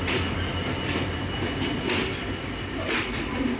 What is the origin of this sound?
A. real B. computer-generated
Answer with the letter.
A